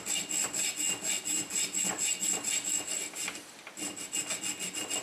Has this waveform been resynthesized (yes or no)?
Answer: no